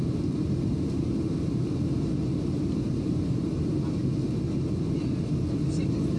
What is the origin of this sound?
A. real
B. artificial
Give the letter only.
A